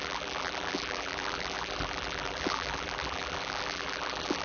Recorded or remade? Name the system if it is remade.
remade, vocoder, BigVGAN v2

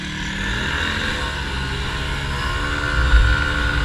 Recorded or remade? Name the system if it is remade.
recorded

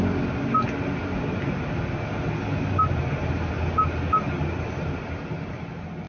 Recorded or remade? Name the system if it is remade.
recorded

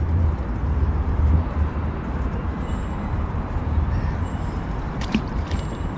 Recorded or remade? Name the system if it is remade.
remade, vocoder, BigVGAN v2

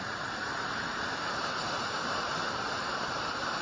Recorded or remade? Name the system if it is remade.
remade, vocoder, BigVGAN v2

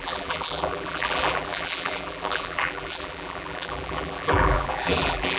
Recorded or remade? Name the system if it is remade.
remade, vocoder, BigVGAN v2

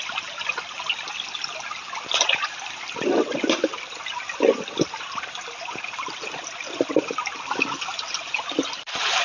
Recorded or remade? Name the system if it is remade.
recorded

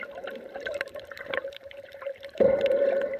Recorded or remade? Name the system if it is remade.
remade, vocoder, BigVGAN v2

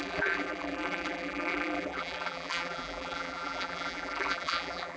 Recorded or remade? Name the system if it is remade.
remade, vocoder, BigVGAN v2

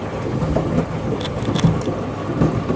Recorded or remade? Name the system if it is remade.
recorded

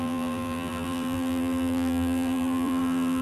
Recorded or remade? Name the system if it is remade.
remade, vocoder, BigVGAN v2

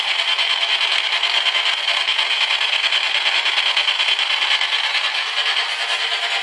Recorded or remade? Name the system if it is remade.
recorded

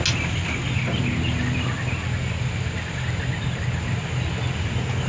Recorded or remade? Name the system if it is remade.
recorded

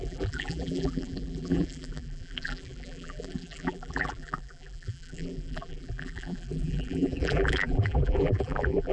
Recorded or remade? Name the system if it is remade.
remade, vocoder, BigVGAN v2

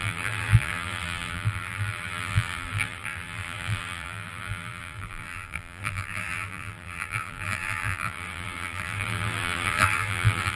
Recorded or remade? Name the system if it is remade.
remade, vocoder, BigVGAN v2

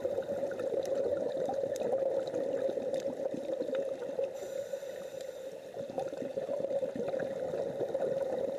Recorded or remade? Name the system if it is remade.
recorded